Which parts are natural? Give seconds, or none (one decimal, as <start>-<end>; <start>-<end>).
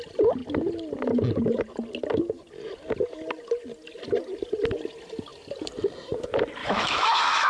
0.0-6.6